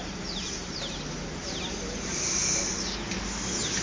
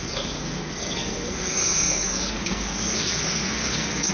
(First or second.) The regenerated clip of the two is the second